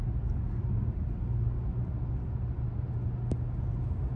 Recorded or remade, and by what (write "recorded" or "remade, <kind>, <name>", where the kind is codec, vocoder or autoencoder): recorded